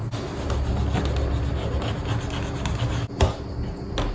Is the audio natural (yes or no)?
yes